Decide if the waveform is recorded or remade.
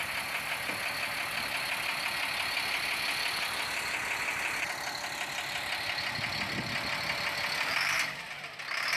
recorded